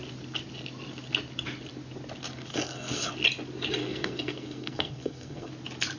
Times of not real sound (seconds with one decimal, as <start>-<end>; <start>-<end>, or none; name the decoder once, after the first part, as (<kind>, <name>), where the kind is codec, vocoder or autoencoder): 2.5-3.1 (codec, SNAC); 3.8-5.5